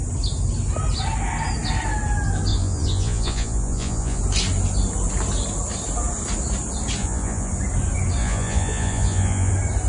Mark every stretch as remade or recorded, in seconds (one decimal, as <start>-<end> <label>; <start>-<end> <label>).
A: 0.0-2.5 recorded; 2.5-4.2 remade; 4.2-7.0 recorded; 7.0-7.5 remade; 7.5-8.2 recorded; 8.2-9.5 remade; 9.5-9.9 recorded